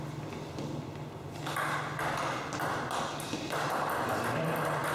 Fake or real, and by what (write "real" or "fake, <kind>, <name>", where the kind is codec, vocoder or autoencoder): real